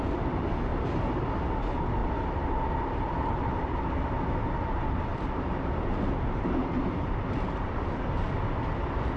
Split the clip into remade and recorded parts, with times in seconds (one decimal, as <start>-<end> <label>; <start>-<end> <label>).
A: 0.0-0.7 recorded; 0.7-1.4 remade; 1.4-2.0 recorded; 2.0-3.4 remade; 3.4-5.1 recorded; 5.1-8.3 remade; 8.3-9.2 recorded